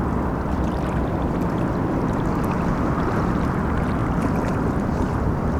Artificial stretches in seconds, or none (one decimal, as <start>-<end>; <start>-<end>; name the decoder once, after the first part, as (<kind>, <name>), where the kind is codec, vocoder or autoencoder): 0.0-5.6 (vocoder, BigVGAN v2)